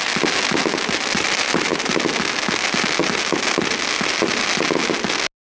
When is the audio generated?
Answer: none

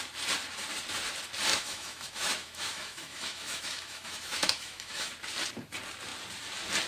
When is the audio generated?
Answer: 1.5-5.1 (autoencoder, DAC-VAE)